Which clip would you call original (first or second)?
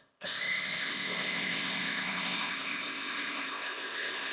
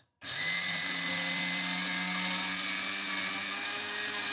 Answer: second